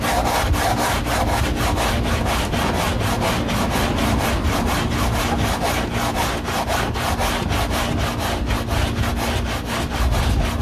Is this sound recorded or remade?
recorded